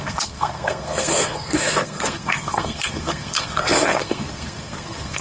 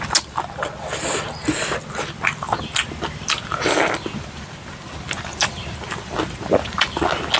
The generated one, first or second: first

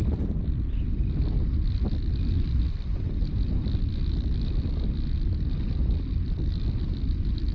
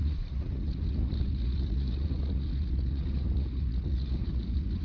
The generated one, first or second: second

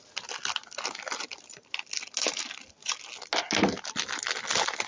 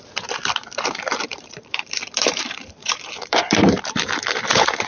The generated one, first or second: second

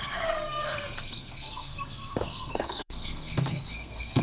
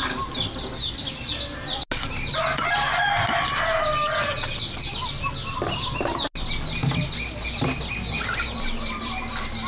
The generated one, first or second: first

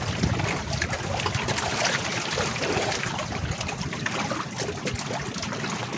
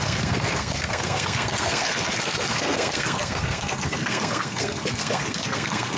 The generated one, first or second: second